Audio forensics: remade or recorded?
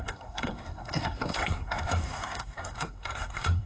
remade